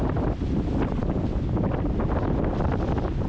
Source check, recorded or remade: recorded